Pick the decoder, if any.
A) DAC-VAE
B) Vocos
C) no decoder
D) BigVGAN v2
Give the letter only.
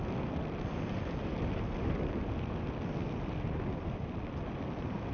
C